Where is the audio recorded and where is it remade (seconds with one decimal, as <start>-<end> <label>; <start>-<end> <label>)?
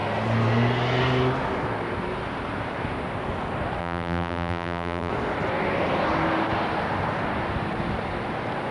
0.0-3.8 recorded; 3.8-5.1 remade; 5.1-8.7 recorded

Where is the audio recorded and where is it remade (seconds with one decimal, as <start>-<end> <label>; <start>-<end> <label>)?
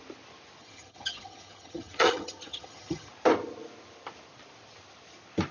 0.0-0.6 recorded; 0.6-3.1 remade; 3.1-5.5 recorded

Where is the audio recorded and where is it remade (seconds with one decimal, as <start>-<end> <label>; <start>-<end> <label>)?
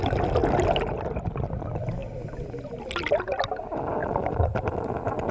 0.0-5.3 recorded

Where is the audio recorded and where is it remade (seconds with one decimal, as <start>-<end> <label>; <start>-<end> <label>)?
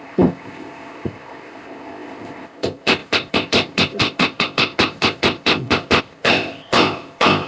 0.0-7.5 remade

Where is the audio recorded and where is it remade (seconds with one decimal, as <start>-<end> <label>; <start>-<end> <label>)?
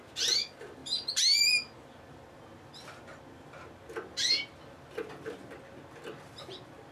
0.0-6.9 recorded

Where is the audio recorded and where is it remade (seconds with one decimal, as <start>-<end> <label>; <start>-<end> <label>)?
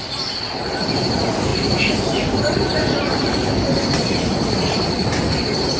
0.0-2.7 recorded; 2.7-3.4 remade; 3.4-5.8 recorded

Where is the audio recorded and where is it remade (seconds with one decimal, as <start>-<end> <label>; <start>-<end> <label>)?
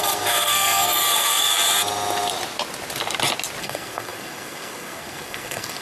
0.0-1.5 remade; 1.5-3.6 recorded; 3.6-5.8 remade